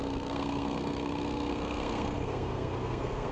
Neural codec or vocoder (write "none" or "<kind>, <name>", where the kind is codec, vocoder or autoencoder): codec, SNAC